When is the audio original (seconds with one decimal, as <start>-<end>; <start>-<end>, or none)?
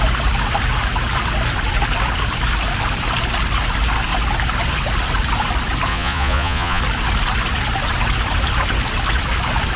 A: 0.0-5.9; 6.8-9.8